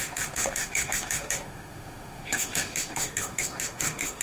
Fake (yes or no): yes